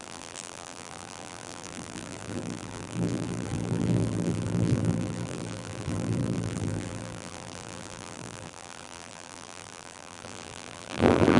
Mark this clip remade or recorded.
remade